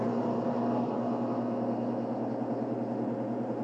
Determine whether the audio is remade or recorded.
recorded